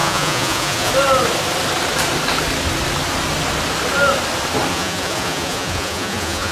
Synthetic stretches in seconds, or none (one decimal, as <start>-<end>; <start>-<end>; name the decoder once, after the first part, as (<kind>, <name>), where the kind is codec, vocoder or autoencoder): 0.0-0.9 (vocoder, Vocos); 4.7-6.5